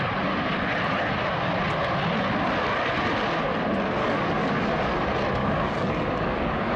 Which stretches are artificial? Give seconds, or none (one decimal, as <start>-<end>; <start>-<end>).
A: 4.0-4.7; 5.4-6.8